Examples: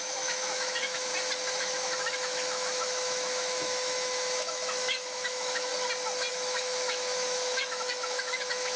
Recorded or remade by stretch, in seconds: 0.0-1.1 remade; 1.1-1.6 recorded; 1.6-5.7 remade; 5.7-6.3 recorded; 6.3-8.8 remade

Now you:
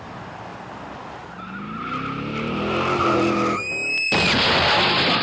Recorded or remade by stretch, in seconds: 0.0-5.2 recorded

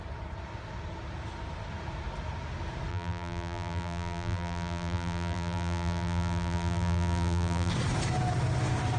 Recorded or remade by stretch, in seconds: 0.0-2.9 recorded; 2.9-7.7 remade; 7.7-9.0 recorded